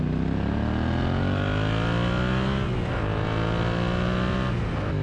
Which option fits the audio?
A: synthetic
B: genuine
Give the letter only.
B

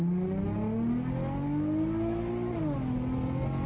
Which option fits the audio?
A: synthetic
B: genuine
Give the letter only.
B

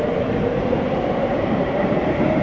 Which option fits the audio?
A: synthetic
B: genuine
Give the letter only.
A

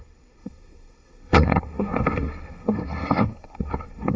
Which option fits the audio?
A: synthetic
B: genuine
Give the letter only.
A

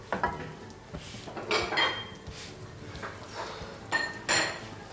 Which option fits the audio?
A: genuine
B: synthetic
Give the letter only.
A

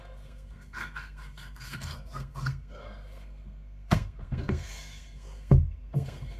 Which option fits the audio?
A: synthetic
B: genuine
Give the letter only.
A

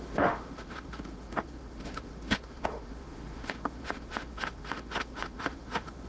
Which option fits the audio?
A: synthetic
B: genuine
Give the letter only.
A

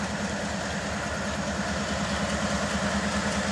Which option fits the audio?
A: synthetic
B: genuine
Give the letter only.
B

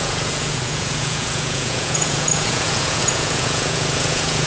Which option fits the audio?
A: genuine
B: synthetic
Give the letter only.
B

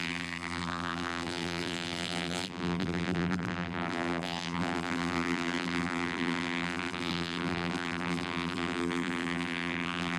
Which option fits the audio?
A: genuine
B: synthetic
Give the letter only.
B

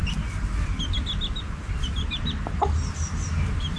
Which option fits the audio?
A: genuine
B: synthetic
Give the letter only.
A